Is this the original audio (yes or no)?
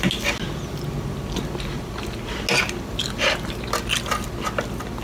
yes